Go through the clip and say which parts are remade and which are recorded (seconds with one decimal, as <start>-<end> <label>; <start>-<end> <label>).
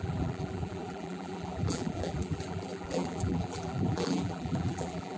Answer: 0.0-5.2 remade